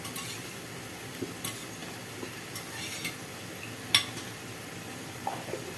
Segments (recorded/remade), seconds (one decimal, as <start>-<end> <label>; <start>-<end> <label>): 0.0-5.8 recorded